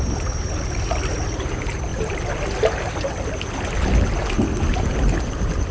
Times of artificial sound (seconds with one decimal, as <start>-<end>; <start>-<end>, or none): 0.0-1.9; 5.3-5.7